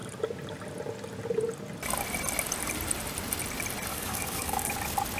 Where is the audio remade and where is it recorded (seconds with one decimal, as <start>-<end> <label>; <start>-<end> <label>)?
0.0-3.9 recorded; 3.9-4.7 remade; 4.7-5.2 recorded